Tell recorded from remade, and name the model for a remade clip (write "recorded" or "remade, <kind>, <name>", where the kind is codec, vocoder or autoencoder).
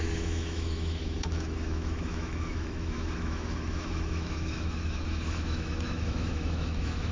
remade, autoencoder, DAC-VAE